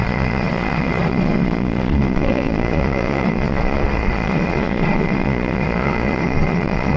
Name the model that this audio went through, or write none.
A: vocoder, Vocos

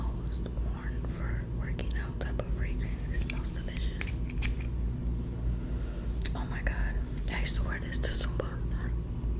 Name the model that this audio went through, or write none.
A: none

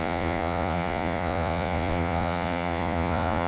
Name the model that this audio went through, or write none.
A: vocoder, Vocos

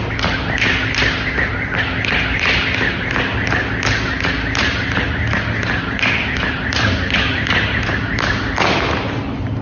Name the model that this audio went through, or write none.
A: none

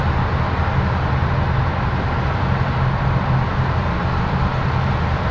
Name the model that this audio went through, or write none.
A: none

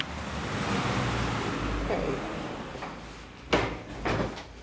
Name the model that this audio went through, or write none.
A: none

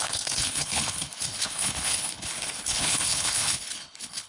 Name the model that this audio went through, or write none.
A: codec, HILCodec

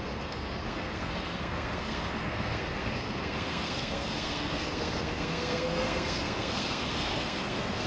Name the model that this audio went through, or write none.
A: codec, SNAC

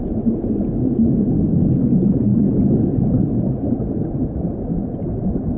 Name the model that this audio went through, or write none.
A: none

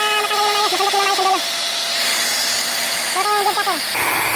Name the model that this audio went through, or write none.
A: none